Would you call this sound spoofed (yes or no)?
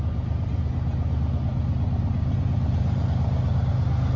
no